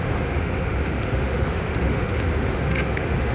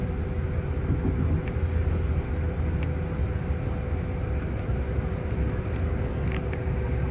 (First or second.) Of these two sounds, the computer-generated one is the first